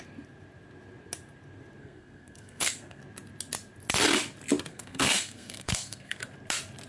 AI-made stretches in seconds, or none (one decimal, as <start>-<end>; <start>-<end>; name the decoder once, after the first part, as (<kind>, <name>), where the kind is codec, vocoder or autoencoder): 1.8-3.0 (codec, SNAC); 4.7-6.2